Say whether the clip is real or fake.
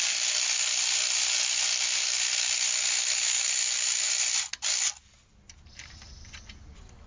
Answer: real